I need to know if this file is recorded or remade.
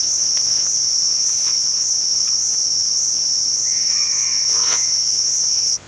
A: remade